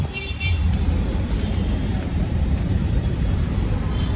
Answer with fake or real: fake